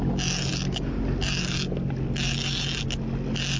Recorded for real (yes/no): yes